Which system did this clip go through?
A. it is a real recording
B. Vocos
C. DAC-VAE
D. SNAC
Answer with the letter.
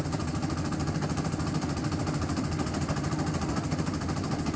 A